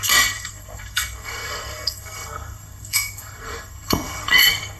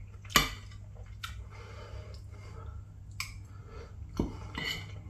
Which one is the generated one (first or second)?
first